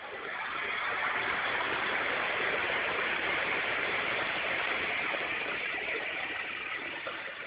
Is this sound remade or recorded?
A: remade